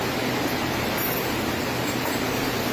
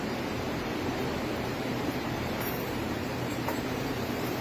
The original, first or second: first